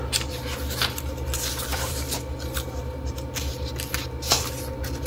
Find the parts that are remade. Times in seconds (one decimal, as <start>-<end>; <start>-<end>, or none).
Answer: 1.7-3.4